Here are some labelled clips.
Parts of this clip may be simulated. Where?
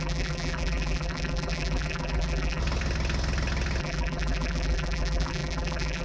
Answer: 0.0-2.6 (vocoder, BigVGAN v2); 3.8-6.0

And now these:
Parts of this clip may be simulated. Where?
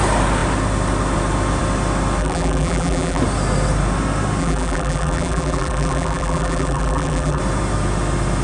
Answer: 2.2-3.2 (vocoder, BigVGAN v2); 4.4-7.4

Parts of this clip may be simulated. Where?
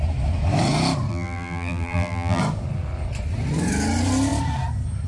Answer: 1.1-2.4 (vocoder, BigVGAN v2)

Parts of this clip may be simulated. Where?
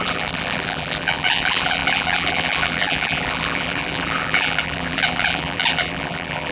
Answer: 0.0-6.5 (vocoder, BigVGAN v2)